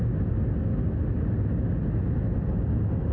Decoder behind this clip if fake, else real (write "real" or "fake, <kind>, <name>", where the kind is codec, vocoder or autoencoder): real